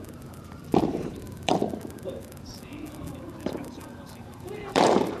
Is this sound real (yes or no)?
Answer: no